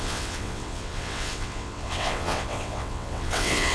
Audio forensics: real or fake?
fake